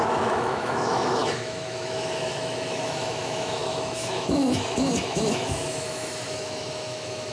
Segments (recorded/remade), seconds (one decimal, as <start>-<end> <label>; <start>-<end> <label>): 0.0-7.3 remade